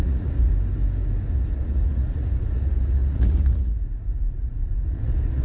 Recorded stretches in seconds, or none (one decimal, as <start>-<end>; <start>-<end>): 0.5-1.3